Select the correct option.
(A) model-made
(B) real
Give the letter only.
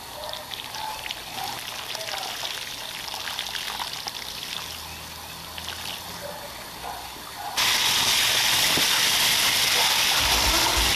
B